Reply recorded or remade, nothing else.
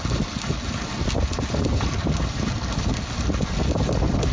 recorded